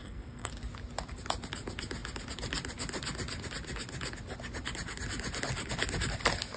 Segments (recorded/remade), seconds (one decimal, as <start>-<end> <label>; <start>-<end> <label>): 0.0-0.5 remade; 0.5-6.6 recorded